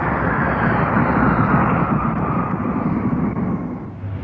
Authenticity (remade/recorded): recorded